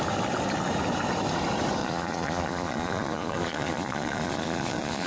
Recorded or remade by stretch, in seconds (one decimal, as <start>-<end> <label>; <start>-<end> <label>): 0.0-1.8 recorded; 1.8-5.1 remade